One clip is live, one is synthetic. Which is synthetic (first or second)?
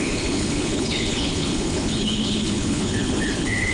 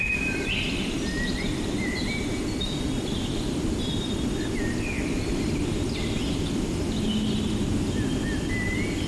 first